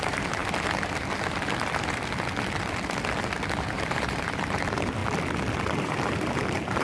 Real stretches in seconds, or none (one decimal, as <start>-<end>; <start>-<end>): 0.4-3.6; 5.0-5.8